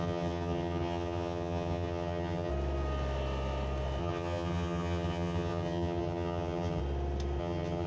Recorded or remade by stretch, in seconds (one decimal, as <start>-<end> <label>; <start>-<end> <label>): 0.0-2.5 remade; 2.5-4.0 recorded; 4.0-6.8 remade; 6.8-7.4 recorded; 7.4-7.9 remade

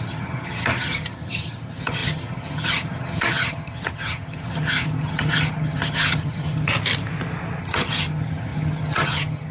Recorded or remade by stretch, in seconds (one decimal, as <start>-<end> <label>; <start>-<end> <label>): 0.0-6.7 remade; 6.7-7.6 recorded; 7.6-9.5 remade

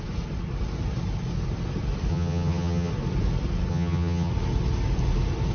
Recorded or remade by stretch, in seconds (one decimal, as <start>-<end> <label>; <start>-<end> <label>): 0.0-2.1 recorded; 2.1-2.9 remade; 2.9-3.7 recorded; 3.7-4.3 remade; 4.3-5.5 recorded

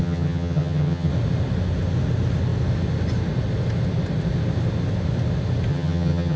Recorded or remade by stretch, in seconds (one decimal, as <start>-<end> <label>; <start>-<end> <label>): 0.0-1.1 remade; 1.1-5.7 recorded; 5.7-6.4 remade